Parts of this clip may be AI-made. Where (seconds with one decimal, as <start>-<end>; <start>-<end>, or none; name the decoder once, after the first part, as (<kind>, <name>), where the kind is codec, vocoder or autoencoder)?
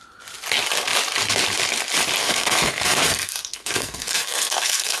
2.2-5.0 (codec, SNAC)